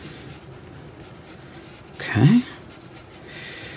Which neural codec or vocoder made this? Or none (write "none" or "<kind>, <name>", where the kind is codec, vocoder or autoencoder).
none